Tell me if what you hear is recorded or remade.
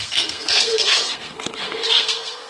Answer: remade